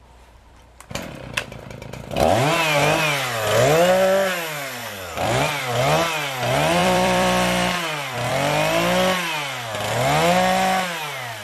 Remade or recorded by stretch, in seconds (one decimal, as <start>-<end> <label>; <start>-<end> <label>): 0.0-4.8 recorded; 4.8-5.6 remade; 5.6-6.8 recorded; 6.8-8.3 remade; 8.3-11.4 recorded